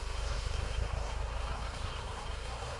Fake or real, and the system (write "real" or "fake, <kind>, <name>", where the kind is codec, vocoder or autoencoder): fake, codec, SNAC